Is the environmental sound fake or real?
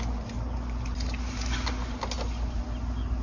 real